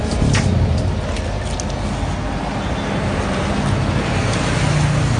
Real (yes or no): yes